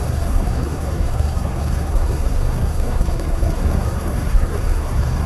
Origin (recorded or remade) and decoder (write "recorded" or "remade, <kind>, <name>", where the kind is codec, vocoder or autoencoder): remade, codec, SNAC